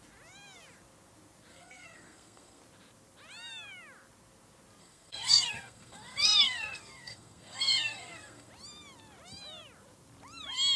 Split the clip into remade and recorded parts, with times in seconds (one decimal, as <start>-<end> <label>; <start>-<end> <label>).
0.0-1.5 recorded; 1.5-2.6 remade; 2.6-4.8 recorded; 4.8-8.5 remade; 8.5-10.8 recorded